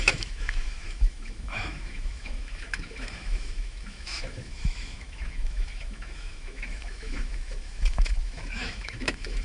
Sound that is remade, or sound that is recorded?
remade